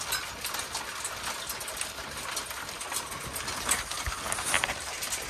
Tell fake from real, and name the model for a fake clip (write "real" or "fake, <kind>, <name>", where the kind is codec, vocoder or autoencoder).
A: real